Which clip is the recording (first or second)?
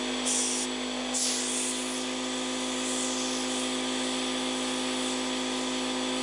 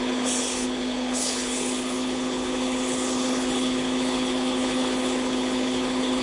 first